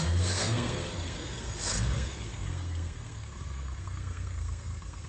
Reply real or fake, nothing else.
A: fake